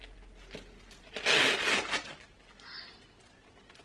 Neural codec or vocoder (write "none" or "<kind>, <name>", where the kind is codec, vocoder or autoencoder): none